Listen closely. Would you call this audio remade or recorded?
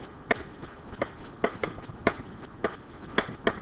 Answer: recorded